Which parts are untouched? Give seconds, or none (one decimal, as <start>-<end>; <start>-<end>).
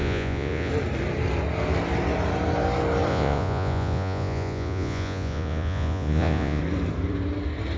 0.7-3.1; 6.6-7.8